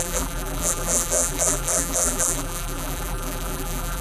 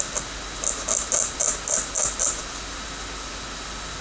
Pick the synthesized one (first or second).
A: first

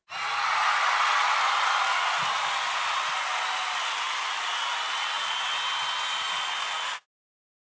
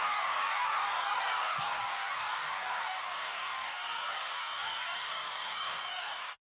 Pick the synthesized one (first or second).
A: second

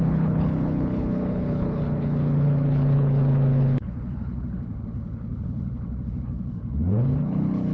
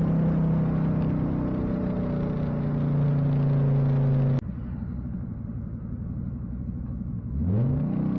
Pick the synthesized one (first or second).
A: first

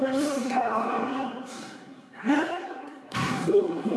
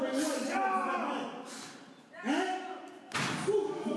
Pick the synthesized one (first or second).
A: first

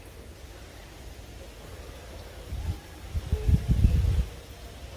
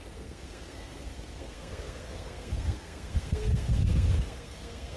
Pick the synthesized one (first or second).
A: second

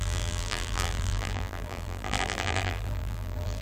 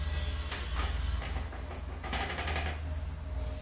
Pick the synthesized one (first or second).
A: first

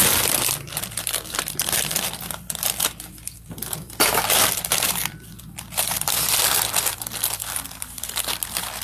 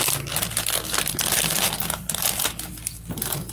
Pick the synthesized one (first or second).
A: first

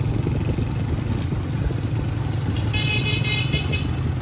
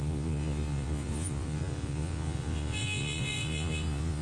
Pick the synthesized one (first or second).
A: second